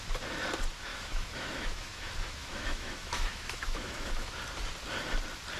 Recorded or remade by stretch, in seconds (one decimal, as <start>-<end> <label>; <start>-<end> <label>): 0.0-0.9 recorded; 0.9-4.3 remade; 4.3-5.6 recorded